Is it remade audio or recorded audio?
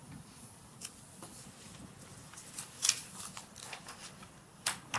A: recorded